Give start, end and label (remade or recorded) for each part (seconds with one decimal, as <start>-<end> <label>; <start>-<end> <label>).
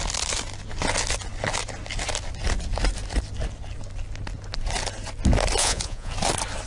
0.0-5.6 recorded; 5.6-6.1 remade; 6.1-6.7 recorded